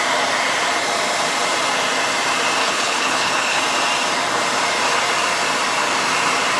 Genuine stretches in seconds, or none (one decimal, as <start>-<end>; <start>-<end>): 0.0-2.6; 3.6-6.6